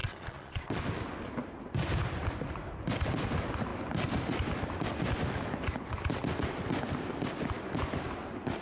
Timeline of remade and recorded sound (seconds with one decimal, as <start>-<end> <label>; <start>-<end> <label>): 0.0-0.8 remade; 0.8-8.6 recorded